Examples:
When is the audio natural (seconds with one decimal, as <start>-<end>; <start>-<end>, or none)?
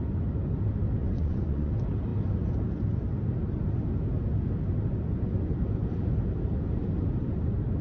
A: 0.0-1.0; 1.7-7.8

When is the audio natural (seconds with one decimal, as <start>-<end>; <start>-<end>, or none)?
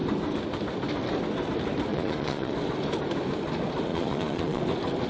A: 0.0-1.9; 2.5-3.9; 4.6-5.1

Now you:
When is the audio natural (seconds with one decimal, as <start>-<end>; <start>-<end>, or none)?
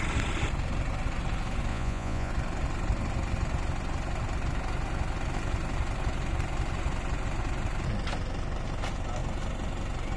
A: 0.0-1.7; 2.3-10.2